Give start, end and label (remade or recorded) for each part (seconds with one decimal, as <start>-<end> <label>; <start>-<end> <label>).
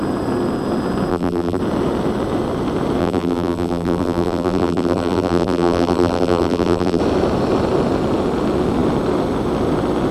0.0-1.1 recorded; 1.1-1.6 remade; 1.6-3.0 recorded; 3.0-7.0 remade; 7.0-10.1 recorded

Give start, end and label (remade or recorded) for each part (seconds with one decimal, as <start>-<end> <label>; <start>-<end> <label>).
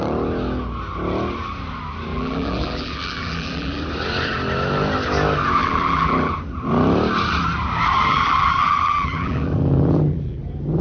0.0-2.1 recorded; 2.1-3.8 remade; 3.8-5.6 recorded; 5.6-6.3 remade; 6.3-8.1 recorded; 8.1-10.4 remade; 10.4-10.8 recorded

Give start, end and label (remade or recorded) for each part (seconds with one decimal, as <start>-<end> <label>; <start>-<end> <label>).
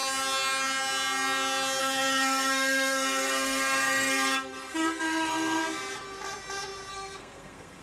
0.0-1.8 recorded; 1.8-5.6 remade; 5.6-6.9 recorded; 6.9-7.8 remade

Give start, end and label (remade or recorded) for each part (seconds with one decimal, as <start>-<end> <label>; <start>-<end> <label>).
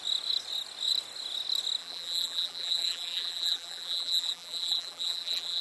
0.0-1.8 recorded; 1.8-5.6 remade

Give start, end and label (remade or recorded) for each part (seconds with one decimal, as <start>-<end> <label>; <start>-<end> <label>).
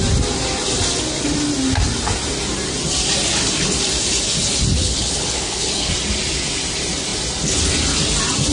0.0-4.8 recorded; 4.8-5.9 remade; 5.9-8.5 recorded